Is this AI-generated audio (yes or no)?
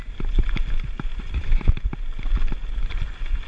no